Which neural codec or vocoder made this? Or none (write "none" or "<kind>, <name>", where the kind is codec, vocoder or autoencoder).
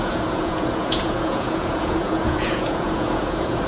vocoder, Vocos